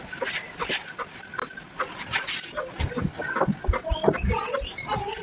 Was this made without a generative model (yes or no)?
yes